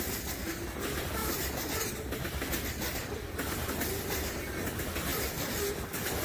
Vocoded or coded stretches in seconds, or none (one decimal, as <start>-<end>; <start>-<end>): 1.2-1.8